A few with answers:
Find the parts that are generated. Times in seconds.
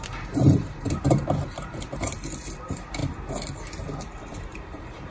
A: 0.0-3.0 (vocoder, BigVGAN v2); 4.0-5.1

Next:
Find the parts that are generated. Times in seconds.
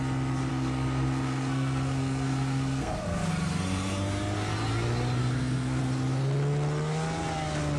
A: 0.5-3.3 (codec, SNAC); 5.2-5.8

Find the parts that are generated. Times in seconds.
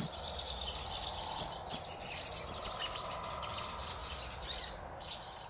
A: 4.0-4.6 (vocoder, BigVGAN v2)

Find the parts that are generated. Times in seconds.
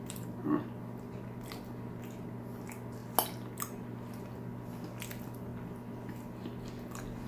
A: none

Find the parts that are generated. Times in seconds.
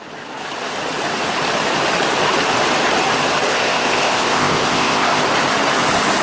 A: 3.5-5.2 (codec, ZipCodec)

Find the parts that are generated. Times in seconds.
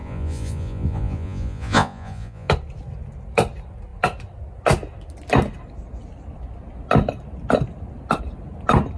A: 0.0-2.5 (vocoder, Vocos)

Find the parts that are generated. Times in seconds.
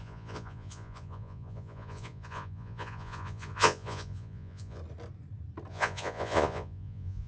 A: 0.0-4.8 (vocoder, Vocos); 5.7-7.3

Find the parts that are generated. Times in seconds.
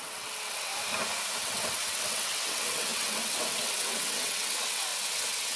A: 0.0-0.7 (vocoder, WaveNeXt); 1.4-5.6